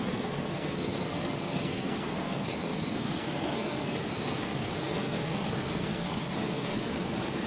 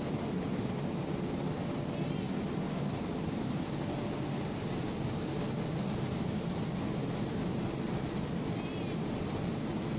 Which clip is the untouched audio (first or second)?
second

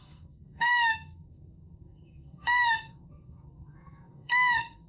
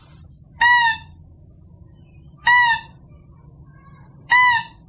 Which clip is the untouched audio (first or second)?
second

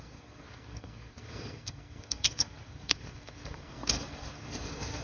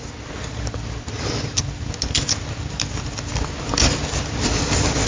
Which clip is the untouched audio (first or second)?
second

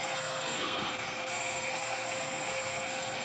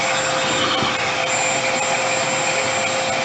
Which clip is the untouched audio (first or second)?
second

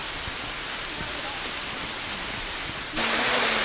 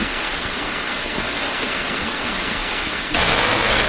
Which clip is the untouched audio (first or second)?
first